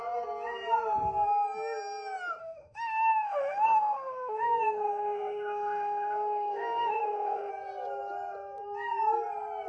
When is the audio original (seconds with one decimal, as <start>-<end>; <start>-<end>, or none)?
0.0-2.4; 7.5-9.7